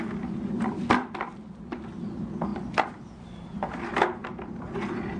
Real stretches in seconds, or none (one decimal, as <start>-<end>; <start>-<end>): 0.0-5.2